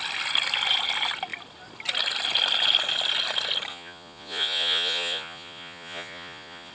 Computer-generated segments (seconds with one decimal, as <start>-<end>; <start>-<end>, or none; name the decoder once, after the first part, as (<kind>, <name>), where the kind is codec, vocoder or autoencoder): 3.7-6.7 (vocoder, Vocos)